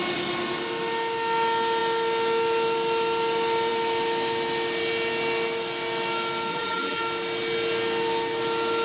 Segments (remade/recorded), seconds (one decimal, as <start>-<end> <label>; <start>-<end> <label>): 0.0-6.5 recorded; 6.5-7.0 remade; 7.0-8.8 recorded